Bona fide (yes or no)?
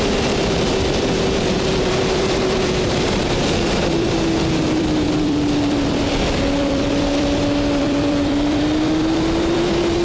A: no